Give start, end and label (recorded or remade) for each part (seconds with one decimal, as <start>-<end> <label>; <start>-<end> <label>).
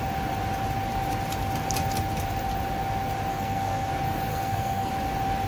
0.0-3.3 recorded; 3.3-3.9 remade; 3.9-4.3 recorded; 4.3-4.9 remade; 4.9-5.5 recorded